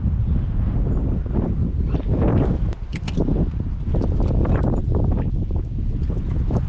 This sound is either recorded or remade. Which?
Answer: recorded